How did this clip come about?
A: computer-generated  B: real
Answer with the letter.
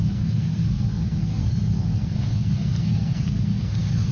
A